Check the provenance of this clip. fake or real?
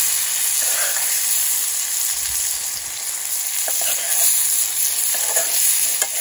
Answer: real